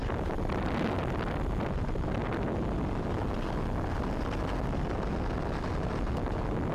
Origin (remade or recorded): recorded